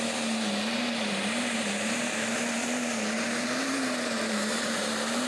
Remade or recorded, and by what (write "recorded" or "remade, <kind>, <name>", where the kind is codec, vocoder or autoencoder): remade, vocoder, BigVGAN v2